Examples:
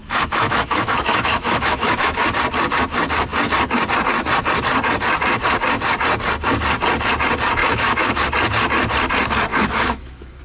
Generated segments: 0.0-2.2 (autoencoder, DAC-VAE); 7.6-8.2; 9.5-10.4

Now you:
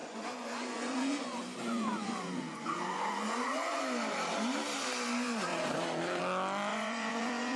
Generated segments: 0.0-3.8 (vocoder, Vocos); 6.7-7.6

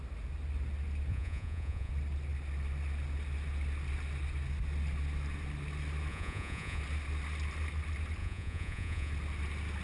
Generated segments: 1.1-1.9 (vocoder, Vocos); 6.1-6.8; 8.2-9.1